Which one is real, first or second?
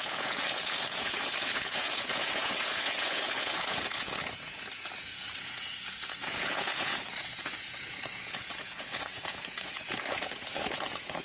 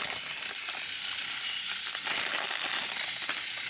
second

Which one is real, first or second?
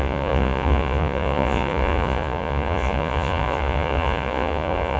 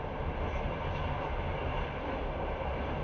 second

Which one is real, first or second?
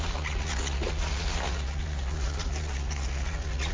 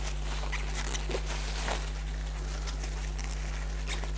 second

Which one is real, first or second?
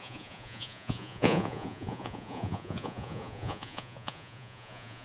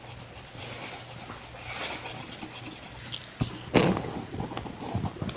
second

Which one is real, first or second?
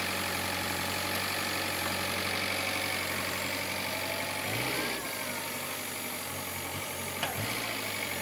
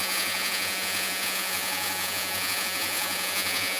first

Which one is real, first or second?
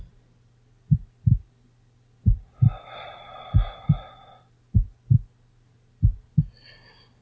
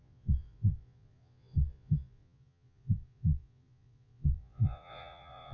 first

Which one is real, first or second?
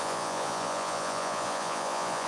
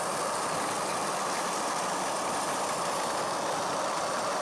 second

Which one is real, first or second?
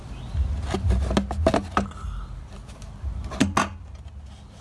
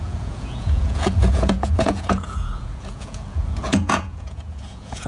first